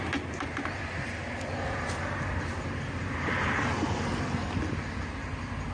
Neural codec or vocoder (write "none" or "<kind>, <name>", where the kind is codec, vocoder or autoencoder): none